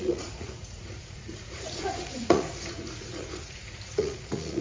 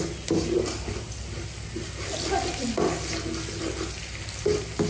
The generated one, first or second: first